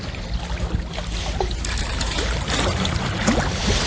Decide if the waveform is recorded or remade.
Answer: recorded